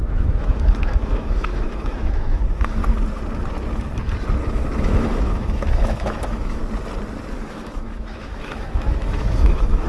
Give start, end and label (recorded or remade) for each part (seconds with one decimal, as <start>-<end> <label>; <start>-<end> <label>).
0.0-2.8 remade; 2.8-4.5 recorded; 4.5-6.6 remade; 6.6-7.5 recorded; 7.5-9.9 remade